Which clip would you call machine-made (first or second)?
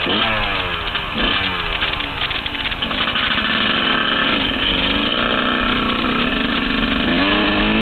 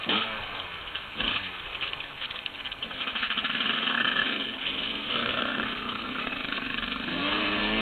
second